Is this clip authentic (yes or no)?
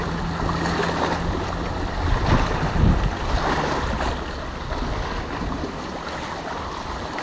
yes